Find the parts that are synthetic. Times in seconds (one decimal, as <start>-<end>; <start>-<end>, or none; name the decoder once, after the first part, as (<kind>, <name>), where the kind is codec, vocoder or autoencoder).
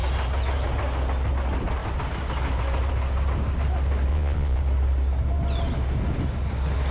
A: 4.1-4.6 (vocoder, Vocos)